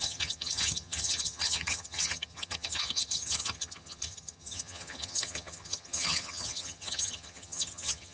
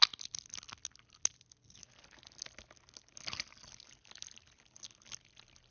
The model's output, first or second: first